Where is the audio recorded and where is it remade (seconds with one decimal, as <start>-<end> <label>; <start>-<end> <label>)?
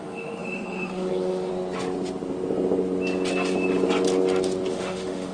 0.0-1.5 remade; 1.5-4.7 recorded; 4.7-5.3 remade